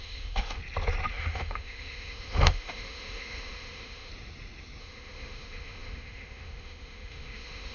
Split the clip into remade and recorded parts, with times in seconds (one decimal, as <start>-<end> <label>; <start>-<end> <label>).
0.0-0.6 remade; 0.6-1.1 recorded; 1.1-4.1 remade; 4.1-4.8 recorded; 4.8-7.7 remade